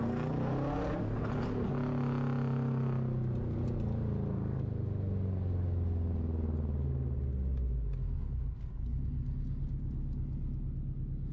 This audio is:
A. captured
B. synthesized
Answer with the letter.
A